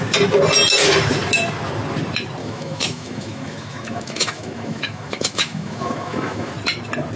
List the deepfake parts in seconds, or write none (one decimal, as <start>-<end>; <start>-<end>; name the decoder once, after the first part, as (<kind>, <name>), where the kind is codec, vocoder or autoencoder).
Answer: 2.4-6.5 (autoencoder, DAC-VAE)

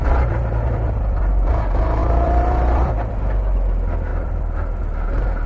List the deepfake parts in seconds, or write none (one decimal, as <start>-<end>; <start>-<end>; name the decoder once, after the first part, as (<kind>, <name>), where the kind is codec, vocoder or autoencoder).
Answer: 0.0-1.5 (vocoder, BigVGAN v2); 2.0-3.1; 4.1-4.8

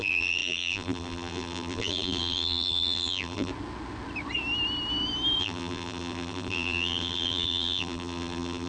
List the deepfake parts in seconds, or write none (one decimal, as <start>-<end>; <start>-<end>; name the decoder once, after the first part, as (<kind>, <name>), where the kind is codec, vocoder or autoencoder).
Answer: 0.0-3.5 (vocoder, BigVGAN v2); 5.4-8.7

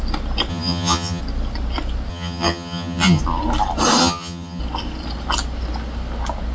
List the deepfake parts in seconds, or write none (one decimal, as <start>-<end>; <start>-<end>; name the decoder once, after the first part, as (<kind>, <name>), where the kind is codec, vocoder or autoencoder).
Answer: 0.5-1.2 (vocoder, HiFi-GAN); 2.1-3.2; 4.0-4.6

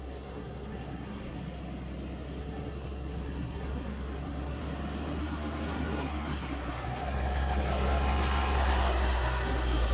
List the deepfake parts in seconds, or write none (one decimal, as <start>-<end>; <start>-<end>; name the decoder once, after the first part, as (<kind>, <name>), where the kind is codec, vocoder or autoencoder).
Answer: 0.0-1.4 (codec, SNAC); 2.4-4.6; 5.2-9.9

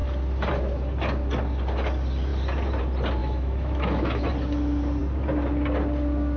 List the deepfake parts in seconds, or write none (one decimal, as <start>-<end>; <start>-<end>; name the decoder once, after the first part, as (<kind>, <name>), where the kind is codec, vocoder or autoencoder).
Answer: 3.2-4.3 (autoencoder, DAC-VAE)

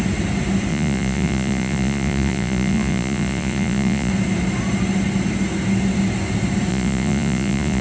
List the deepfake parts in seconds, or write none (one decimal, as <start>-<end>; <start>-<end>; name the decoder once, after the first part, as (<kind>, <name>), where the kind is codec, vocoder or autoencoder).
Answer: 0.7-4.1 (vocoder, Vocos); 6.7-7.8